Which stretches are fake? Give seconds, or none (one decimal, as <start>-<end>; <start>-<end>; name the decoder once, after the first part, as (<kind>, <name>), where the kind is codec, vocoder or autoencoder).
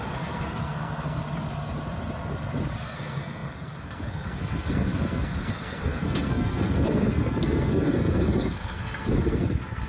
0.0-1.2 (codec, SNAC); 2.8-9.9